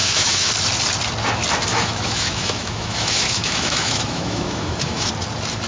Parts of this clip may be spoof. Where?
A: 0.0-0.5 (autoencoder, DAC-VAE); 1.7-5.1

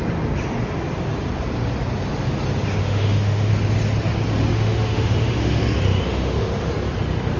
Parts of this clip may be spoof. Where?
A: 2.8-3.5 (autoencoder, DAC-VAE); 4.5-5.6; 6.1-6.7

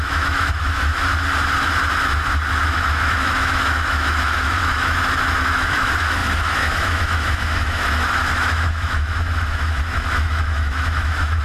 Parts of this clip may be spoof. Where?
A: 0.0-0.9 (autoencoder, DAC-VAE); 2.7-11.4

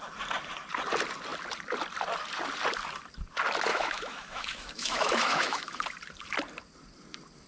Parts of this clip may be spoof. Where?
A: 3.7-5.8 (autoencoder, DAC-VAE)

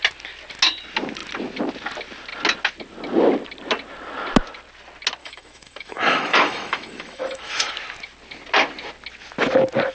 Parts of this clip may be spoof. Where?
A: 5.2-7.7 (autoencoder, DAC-VAE)

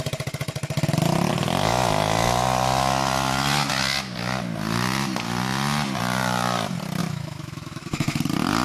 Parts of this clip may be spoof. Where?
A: 7.0-8.2 (autoencoder, DAC-VAE)